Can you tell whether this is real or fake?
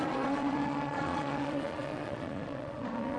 fake